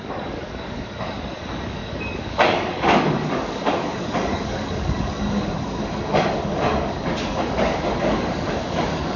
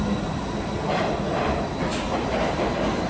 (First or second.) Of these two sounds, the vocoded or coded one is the first